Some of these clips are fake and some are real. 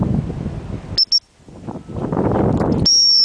real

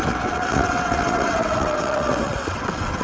fake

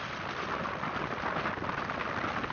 real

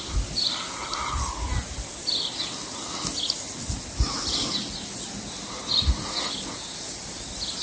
real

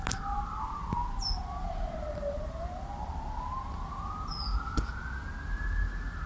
real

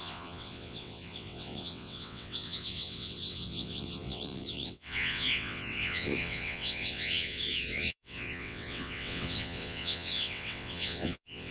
fake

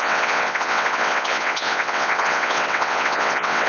fake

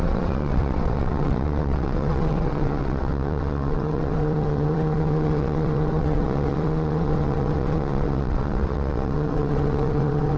fake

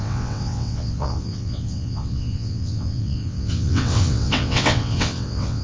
fake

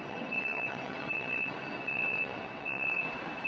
fake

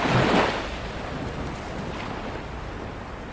real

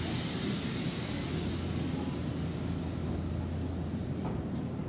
real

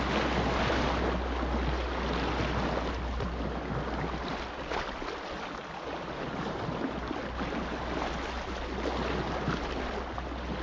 real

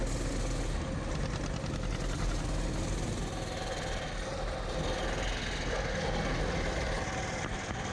real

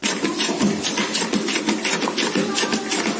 real